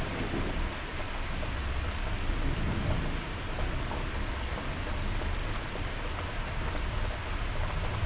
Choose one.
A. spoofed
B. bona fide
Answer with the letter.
B